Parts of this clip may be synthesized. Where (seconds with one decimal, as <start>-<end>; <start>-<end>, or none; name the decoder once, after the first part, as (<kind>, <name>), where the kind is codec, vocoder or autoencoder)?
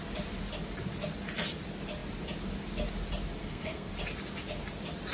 3.4-3.9 (codec, SNAC)